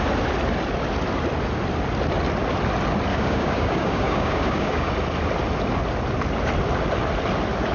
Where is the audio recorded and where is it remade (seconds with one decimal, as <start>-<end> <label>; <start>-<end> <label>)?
0.0-3.1 recorded; 3.1-4.9 remade; 4.9-7.7 recorded